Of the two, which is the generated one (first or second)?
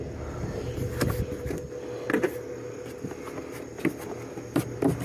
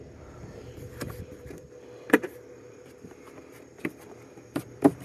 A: second